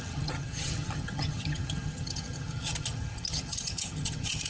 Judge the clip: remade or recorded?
remade